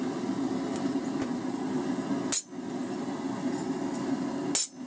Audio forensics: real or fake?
real